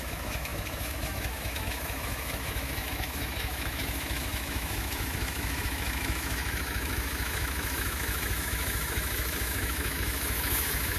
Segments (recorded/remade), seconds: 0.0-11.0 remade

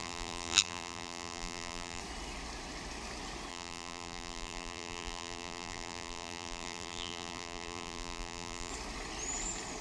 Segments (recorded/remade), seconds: 0.0-2.0 remade; 2.0-3.5 recorded; 3.5-8.7 remade; 8.7-9.8 recorded

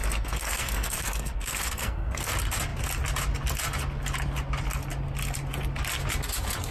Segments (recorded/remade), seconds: 0.0-2.3 remade; 2.3-6.7 recorded

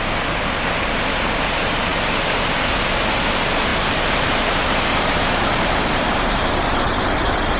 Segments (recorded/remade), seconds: 0.0-1.9 remade; 1.9-2.7 recorded; 2.7-7.6 remade

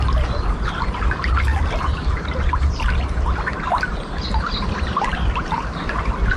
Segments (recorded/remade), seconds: 0.0-6.4 recorded